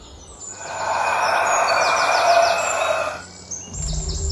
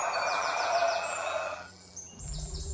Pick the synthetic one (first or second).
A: second